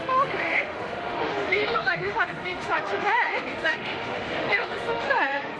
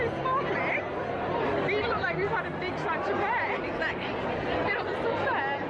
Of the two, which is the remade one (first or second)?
first